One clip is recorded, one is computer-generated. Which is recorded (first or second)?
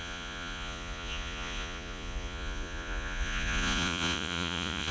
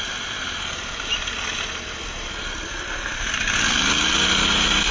second